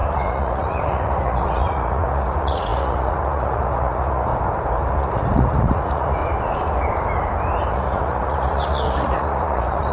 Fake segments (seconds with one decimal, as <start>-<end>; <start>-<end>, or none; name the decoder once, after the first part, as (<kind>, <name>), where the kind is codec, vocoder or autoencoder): 0.0-4.3 (vocoder, Vocos); 4.9-6.2; 7.7-9.9